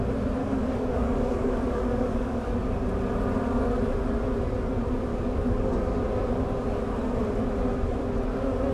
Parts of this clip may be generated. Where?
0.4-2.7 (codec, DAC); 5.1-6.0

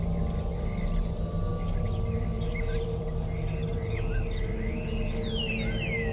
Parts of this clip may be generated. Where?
none